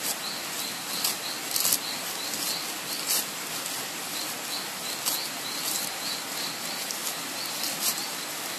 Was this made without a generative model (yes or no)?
yes